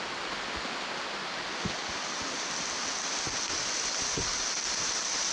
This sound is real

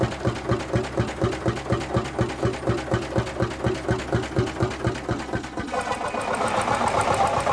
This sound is real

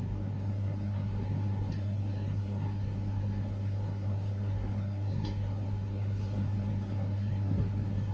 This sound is fake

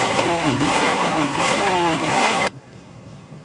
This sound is fake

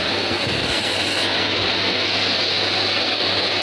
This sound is fake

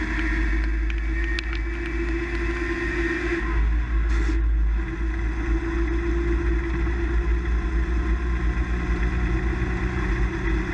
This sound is real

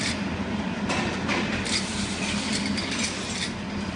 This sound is real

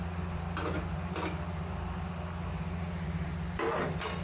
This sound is real